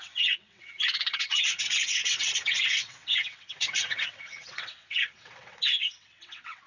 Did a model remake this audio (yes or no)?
yes